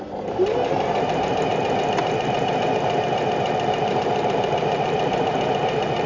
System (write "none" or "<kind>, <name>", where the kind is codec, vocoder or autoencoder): vocoder, BigVGAN v2